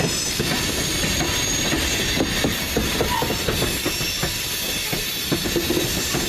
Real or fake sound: real